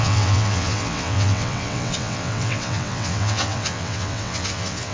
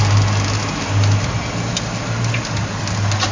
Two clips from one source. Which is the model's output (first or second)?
first